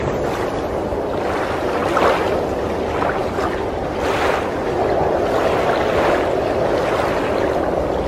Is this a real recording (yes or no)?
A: yes